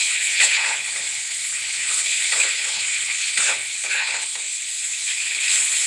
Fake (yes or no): yes